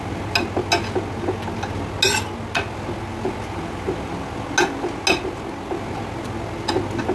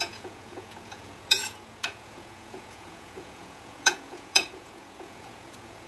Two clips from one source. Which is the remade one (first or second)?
second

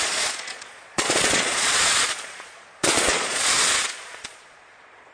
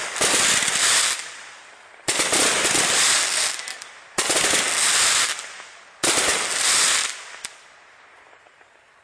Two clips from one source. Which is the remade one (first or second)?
first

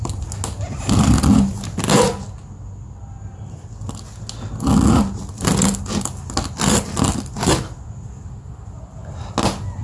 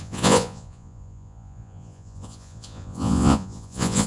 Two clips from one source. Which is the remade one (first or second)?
second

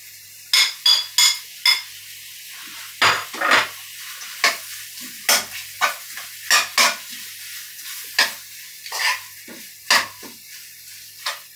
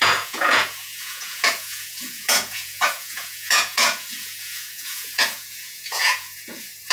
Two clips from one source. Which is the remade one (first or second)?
second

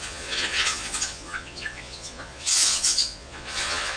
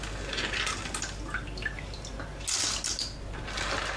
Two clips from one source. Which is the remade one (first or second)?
first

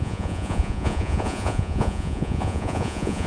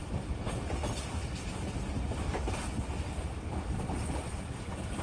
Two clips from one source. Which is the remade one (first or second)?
first